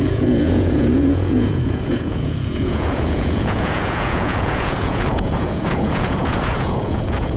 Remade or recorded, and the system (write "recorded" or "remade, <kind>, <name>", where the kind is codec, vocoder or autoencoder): remade, vocoder, Vocos